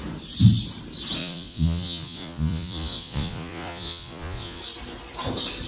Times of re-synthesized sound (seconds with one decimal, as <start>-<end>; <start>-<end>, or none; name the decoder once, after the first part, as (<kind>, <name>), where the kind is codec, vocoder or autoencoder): 1.2-4.6 (vocoder, Vocos)